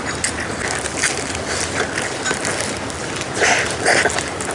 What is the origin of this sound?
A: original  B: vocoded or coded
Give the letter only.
A